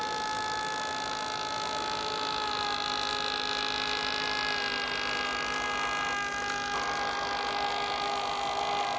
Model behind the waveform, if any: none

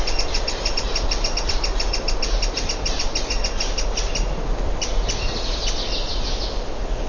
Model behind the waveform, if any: none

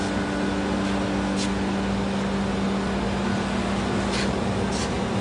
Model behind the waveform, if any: none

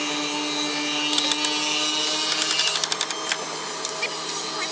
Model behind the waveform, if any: none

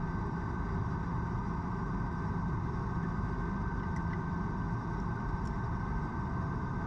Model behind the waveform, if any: none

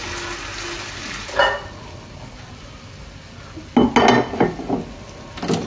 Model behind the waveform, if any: none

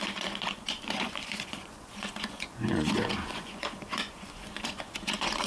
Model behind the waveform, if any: vocoder, Vocos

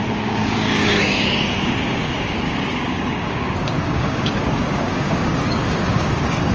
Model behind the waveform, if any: codec, DAC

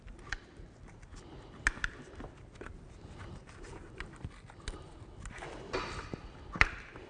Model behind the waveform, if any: none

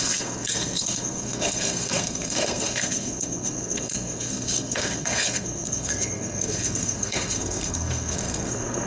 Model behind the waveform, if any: codec, SNAC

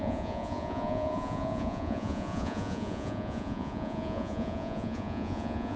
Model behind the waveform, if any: vocoder, Vocos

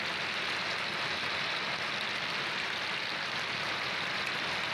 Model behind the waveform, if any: none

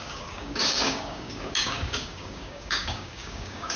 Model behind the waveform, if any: codec, DAC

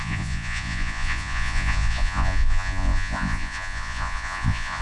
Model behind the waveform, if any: vocoder, Vocos